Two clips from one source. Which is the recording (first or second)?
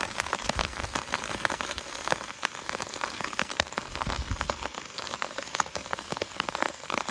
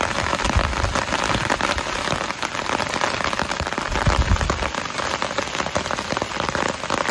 second